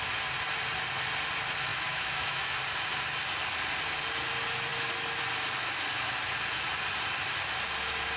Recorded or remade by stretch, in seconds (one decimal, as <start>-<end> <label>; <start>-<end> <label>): 0.0-1.7 recorded; 1.7-2.4 remade; 2.4-8.2 recorded